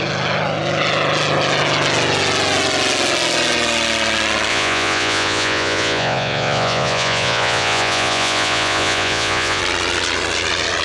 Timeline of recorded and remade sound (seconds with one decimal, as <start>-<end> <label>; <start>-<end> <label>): 0.0-4.5 recorded; 4.5-9.6 remade; 9.6-10.8 recorded